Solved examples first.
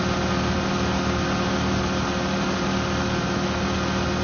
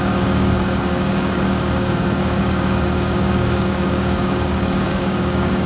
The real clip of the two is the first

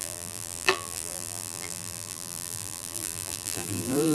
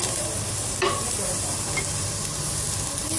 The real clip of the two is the second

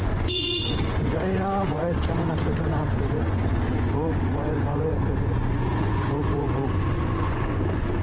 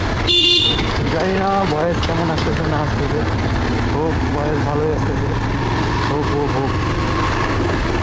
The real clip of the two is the second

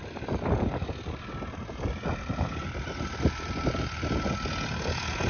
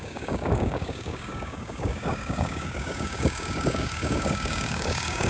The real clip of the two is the first